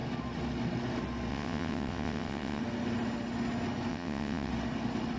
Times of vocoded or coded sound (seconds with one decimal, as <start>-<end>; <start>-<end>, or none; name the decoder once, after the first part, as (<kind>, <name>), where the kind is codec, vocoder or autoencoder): 1.3-2.6 (vocoder, WaveNeXt); 3.9-4.5